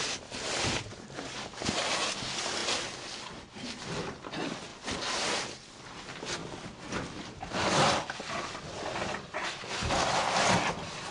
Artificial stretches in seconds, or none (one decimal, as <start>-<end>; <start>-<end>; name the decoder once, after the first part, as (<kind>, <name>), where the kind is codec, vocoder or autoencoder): none